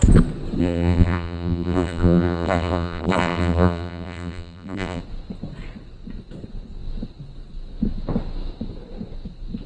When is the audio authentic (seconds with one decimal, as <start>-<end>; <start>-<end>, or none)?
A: 0.0-0.6; 5.0-9.7